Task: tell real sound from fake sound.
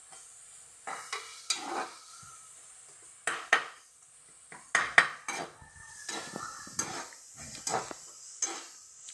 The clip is real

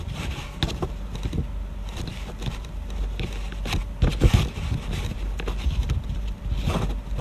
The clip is real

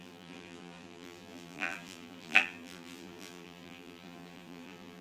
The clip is fake